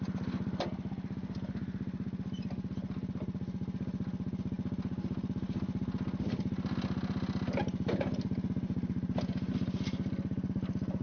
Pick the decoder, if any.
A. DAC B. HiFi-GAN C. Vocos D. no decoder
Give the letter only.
D